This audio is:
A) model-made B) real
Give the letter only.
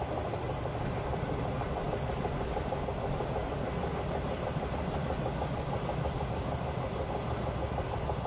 B